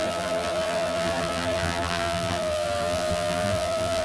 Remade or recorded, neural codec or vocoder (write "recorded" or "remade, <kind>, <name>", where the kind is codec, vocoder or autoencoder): remade, vocoder, BigVGAN v2